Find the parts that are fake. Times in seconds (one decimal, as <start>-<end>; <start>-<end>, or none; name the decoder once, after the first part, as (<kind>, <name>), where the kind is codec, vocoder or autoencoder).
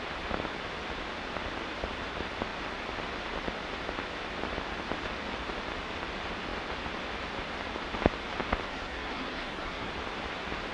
8.7-9.9 (codec, SNAC)